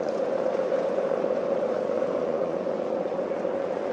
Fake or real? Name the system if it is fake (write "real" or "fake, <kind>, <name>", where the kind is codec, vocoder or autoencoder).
fake, vocoder, Vocos